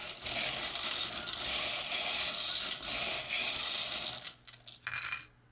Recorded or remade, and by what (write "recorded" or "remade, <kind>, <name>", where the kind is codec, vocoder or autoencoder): recorded